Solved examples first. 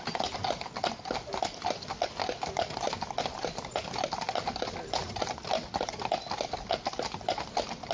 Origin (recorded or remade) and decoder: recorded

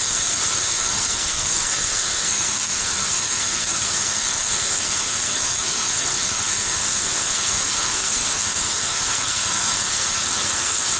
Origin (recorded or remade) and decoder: remade, codec, SNAC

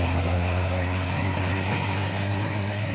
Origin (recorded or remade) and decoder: remade, codec, SNAC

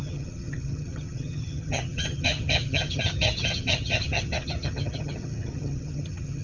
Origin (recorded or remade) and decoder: remade, vocoder, HiFi-GAN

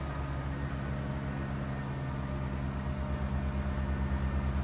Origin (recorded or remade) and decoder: recorded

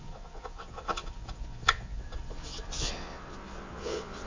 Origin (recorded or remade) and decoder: remade, vocoder, Vocos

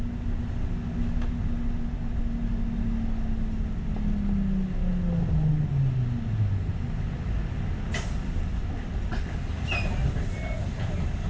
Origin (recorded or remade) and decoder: recorded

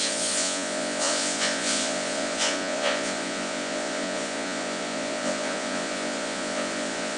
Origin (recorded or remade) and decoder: remade, vocoder, Vocos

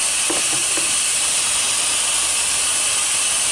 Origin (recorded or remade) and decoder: recorded